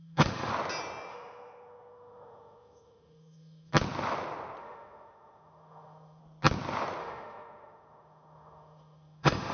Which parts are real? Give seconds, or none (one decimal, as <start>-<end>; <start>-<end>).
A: 0.5-1.1; 3.7-4.6; 6.2-7.0